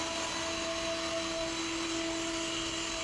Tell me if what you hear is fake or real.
real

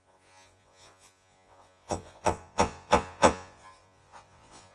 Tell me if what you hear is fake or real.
fake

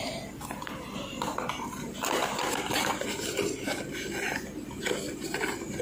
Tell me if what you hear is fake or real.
real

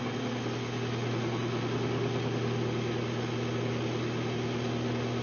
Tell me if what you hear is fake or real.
real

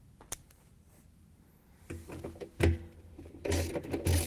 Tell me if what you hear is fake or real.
real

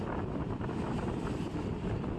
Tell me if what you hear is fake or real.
fake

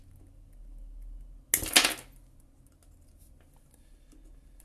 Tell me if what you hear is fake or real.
real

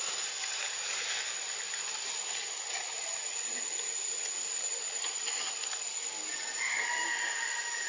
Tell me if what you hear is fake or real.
real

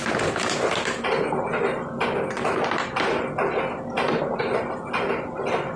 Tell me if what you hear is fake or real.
real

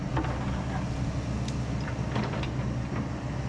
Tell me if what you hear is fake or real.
real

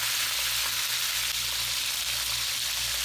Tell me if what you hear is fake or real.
real